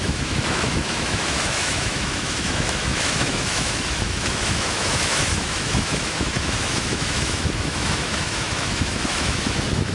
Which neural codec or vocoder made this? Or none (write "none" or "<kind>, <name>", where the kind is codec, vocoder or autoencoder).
autoencoder, DAC-VAE